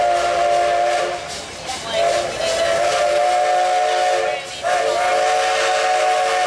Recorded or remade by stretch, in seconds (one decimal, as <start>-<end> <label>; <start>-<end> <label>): 0.0-6.5 recorded